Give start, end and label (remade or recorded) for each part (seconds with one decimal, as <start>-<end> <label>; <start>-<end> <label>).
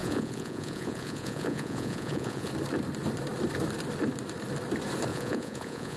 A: 0.0-2.5 remade; 2.5-5.1 recorded; 5.1-6.0 remade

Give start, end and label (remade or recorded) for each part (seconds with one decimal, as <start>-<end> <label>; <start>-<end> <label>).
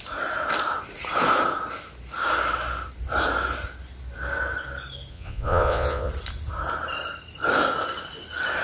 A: 0.0-5.1 recorded; 5.1-6.1 remade; 6.1-8.6 recorded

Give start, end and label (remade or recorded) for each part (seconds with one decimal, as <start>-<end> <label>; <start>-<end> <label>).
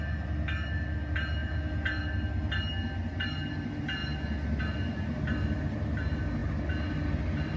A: 0.0-1.4 recorded; 1.4-2.1 remade; 2.1-7.6 recorded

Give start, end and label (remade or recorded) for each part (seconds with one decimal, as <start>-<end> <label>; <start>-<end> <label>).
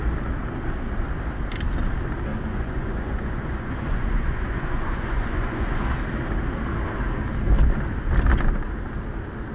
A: 0.0-2.3 recorded; 2.3-5.8 remade; 5.8-9.5 recorded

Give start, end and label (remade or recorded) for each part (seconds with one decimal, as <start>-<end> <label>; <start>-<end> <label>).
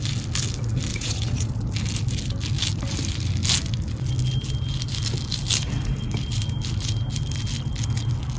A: 0.0-0.9 recorded; 0.9-1.5 remade; 1.5-8.4 recorded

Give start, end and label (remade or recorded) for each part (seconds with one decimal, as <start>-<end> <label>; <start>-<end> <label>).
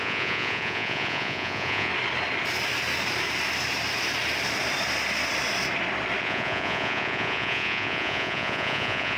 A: 0.0-1.9 remade; 1.9-6.2 recorded; 6.2-9.2 remade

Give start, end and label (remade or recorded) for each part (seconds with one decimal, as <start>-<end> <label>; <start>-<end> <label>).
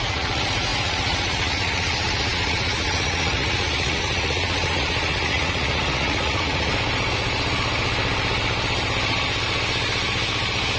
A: 0.0-6.7 remade; 6.7-10.8 recorded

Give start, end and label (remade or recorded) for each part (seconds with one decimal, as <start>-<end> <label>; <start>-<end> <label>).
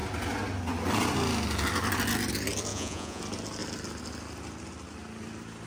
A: 0.0-2.7 recorded; 2.7-3.2 remade; 3.2-5.7 recorded